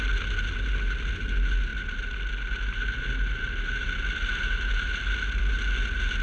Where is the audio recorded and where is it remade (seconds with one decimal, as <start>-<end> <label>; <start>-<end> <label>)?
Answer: 0.0-6.2 recorded